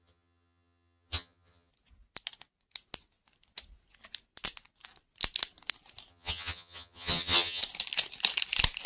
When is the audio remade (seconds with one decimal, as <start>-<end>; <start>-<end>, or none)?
0.0-1.7; 6.1-7.6